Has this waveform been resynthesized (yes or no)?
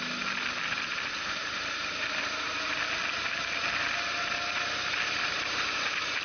no